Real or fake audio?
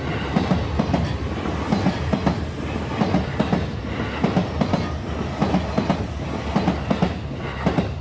real